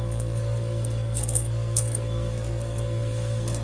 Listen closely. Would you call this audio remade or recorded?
remade